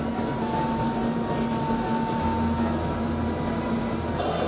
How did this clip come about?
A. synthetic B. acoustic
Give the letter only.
B